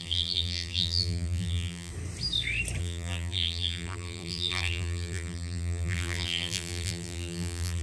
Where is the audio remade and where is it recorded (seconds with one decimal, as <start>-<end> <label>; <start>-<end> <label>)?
0.0-1.9 remade; 1.9-2.8 recorded; 2.8-7.8 remade